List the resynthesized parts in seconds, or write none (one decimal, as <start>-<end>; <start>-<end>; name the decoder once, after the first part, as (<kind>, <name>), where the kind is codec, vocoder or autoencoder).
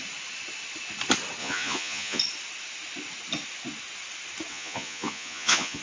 1.4-2.2 (vocoder, Vocos); 4.5-5.8